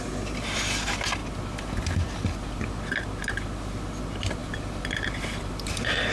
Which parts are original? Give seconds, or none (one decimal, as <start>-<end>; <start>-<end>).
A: 0.0-6.1